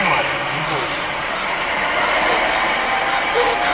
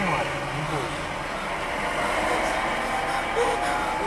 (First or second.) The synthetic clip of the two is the first